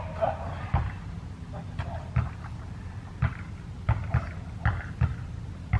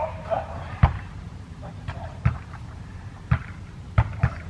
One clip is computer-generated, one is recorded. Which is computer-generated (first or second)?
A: second